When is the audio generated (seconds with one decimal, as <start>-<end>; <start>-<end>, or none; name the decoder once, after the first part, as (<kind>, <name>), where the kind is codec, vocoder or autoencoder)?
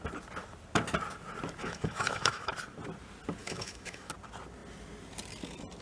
1.6-2.5 (autoencoder, DAC-VAE); 3.4-4.1